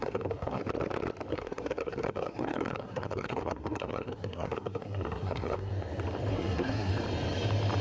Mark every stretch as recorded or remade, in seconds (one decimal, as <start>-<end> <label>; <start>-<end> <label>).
0.0-0.6 remade; 0.6-1.3 recorded; 1.3-5.7 remade; 5.7-6.3 recorded; 6.3-6.9 remade; 6.9-7.8 recorded